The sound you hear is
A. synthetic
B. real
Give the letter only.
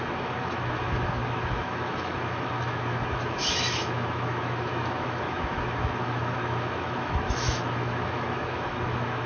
A